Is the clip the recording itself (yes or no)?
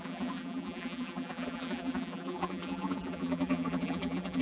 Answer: no